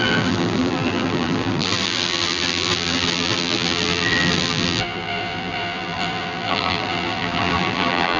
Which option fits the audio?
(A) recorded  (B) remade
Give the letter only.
B